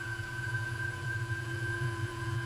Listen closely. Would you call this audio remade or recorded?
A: remade